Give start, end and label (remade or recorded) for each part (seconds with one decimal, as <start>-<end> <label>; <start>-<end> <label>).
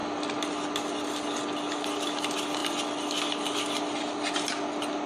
0.0-5.1 recorded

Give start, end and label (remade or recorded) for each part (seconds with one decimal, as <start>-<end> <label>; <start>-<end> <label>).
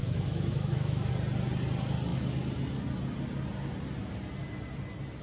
0.0-1.1 remade; 1.1-5.2 recorded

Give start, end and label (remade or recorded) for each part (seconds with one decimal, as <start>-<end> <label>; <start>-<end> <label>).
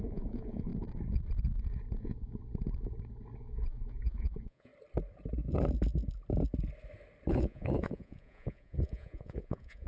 0.0-0.7 remade; 0.7-2.0 recorded; 2.0-2.4 remade; 2.4-3.4 recorded; 3.4-4.7 remade; 4.7-7.3 recorded; 7.3-9.9 remade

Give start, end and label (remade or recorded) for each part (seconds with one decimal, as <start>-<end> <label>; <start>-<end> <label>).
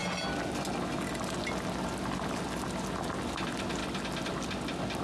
0.0-5.0 recorded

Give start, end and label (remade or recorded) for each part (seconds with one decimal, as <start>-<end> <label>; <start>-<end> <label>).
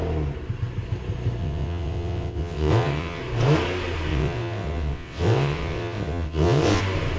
0.0-1.4 recorded; 1.4-3.2 remade; 3.2-4.1 recorded; 4.1-6.8 remade; 6.8-7.2 recorded